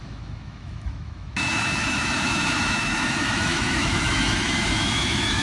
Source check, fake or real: fake